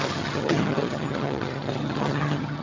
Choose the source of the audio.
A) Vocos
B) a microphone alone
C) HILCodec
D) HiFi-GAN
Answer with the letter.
D